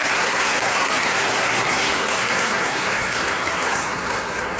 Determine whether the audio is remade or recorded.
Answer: remade